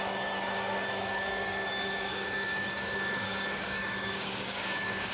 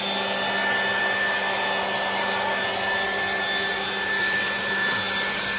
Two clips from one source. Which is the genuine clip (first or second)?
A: second